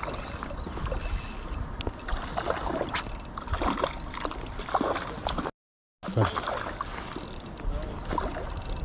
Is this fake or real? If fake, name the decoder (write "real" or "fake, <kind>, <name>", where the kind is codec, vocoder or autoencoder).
real